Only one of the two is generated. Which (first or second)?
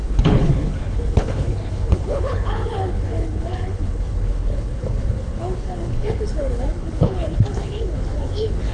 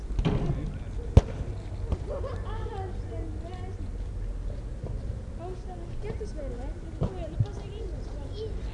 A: first